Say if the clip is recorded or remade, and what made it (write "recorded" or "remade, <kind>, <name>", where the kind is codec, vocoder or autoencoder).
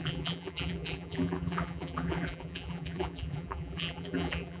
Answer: remade, vocoder, BigVGAN v2